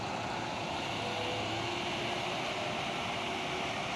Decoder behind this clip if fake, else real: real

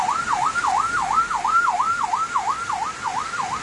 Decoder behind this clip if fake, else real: real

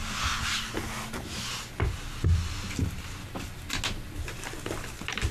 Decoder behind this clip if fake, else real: real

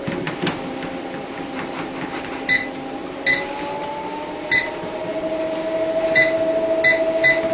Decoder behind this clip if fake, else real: real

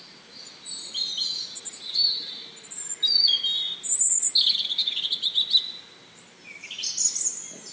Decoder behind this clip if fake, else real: real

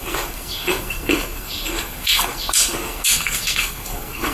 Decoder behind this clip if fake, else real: fake, codec, SNAC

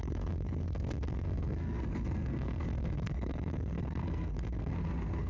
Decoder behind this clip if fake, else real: fake, codec, SNAC